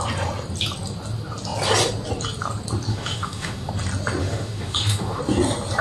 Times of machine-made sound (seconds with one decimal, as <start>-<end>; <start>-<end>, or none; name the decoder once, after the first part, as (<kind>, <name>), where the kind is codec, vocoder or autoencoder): 2.9-3.7 (autoencoder, DAC-VAE); 4.2-5.2